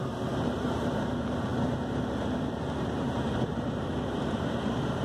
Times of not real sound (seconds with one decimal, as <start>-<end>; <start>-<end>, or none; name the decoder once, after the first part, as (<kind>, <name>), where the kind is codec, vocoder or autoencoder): 0.0-5.0 (vocoder, BigVGAN v2)

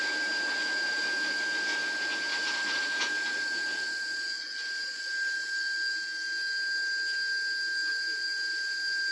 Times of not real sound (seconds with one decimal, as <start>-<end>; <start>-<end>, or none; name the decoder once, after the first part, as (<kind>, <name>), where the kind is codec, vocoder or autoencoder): 2.3-5.0 (vocoder, BigVGAN v2); 7.9-9.1

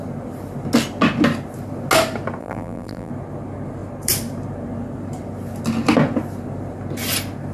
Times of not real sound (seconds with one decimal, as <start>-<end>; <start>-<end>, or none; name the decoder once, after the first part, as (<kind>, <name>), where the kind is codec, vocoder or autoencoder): 2.4-3.1 (vocoder, BigVGAN v2)

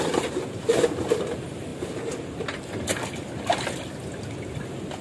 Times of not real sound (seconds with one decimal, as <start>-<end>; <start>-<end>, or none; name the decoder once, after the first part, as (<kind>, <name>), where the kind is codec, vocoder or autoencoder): none

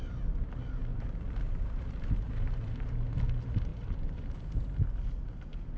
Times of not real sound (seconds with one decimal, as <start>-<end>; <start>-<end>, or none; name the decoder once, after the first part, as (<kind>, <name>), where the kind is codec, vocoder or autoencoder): 0.9-2.9 (vocoder, BigVGAN v2); 3.7-4.2